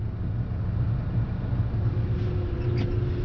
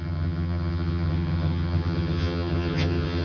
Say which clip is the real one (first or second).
first